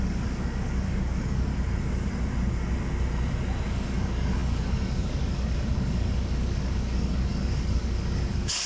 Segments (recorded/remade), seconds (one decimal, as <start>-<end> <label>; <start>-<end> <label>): 0.0-1.5 remade; 1.5-3.7 recorded; 3.7-8.7 remade